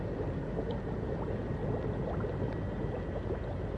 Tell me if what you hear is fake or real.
real